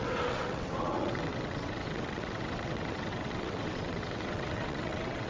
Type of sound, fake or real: fake